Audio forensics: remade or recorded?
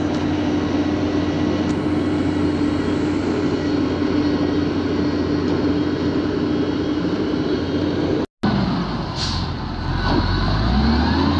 recorded